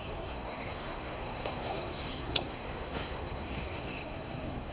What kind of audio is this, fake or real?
fake